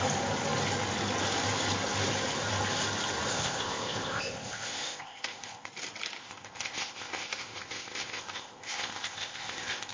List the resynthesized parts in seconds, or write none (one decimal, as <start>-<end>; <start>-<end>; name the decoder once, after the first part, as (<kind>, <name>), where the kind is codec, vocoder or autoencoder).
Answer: 3.3-5.7 (codec, ZipCodec); 6.2-9.9